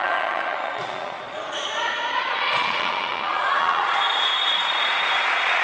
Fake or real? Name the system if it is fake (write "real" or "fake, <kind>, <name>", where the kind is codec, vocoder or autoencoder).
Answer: fake, vocoder, Vocos